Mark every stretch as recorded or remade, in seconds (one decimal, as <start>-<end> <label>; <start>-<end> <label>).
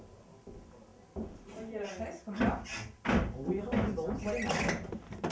0.0-5.3 recorded